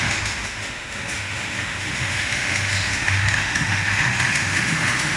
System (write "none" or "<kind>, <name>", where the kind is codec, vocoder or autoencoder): autoencoder, DAC-VAE